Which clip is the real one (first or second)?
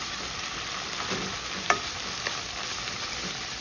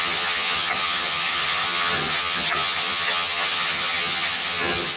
first